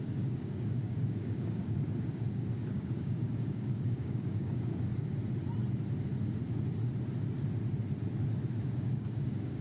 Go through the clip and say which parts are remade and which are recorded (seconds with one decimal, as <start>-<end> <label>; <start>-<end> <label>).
0.0-4.9 remade; 4.9-8.8 recorded; 8.8-9.6 remade